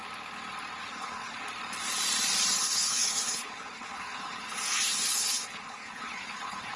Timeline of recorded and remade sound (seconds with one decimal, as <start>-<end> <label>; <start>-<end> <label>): 0.0-0.9 recorded; 0.9-1.4 remade; 1.4-2.6 recorded; 2.6-6.8 remade